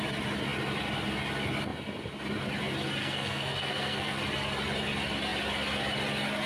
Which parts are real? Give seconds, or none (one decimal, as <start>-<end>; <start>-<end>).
0.0-3.0; 4.2-6.5